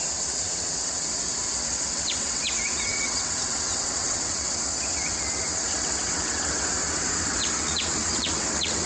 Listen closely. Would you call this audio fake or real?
fake